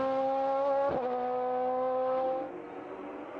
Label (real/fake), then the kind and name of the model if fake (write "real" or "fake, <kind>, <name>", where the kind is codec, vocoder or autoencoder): real